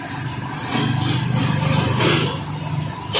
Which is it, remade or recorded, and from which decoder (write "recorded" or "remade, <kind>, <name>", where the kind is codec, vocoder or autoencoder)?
recorded